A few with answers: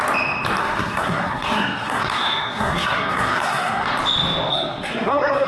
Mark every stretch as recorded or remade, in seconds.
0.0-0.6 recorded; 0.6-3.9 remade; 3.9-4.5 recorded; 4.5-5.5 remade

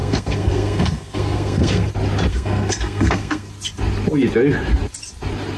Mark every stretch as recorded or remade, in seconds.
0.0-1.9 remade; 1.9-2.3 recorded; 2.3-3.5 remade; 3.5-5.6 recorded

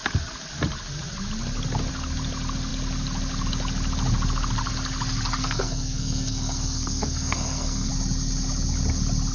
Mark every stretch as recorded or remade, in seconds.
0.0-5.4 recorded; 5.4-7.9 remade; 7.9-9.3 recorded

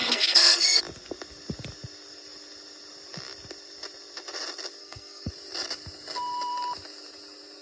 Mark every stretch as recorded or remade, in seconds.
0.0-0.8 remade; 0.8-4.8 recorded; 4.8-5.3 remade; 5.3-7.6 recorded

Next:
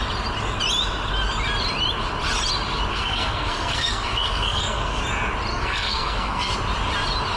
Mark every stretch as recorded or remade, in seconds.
0.0-2.9 recorded; 2.9-5.0 remade; 5.0-5.5 recorded; 5.5-6.5 remade; 6.5-7.4 recorded

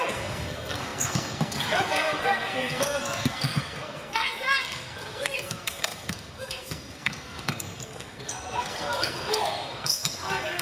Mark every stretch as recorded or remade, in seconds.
0.0-10.6 remade

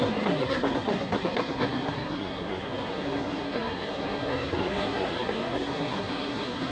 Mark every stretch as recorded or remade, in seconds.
0.0-6.7 remade